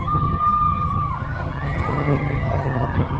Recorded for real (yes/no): no